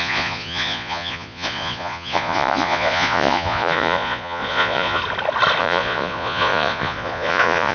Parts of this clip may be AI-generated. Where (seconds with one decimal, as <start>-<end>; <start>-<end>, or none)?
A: 0.0-5.0; 5.6-7.7